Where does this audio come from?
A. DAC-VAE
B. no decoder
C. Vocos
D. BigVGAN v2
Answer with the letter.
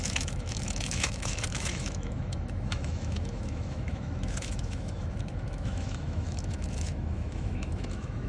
A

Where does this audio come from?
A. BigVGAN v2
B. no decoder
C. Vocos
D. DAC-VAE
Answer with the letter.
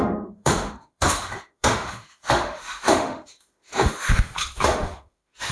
D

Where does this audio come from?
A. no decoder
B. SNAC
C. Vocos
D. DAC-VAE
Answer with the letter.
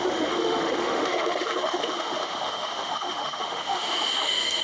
D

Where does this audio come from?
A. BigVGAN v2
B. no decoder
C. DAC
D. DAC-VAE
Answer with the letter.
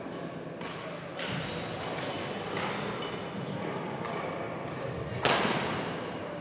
B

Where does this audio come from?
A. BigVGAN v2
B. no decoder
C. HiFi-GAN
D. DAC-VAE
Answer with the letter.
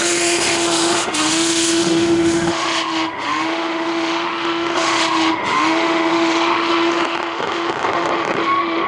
D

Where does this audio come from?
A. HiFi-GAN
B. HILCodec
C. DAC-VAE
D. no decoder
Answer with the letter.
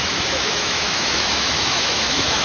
C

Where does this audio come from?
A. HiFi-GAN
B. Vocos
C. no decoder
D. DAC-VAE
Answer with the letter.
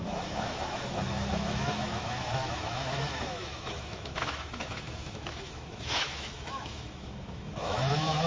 D